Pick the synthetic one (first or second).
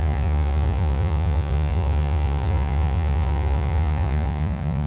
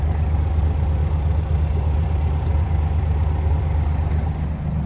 first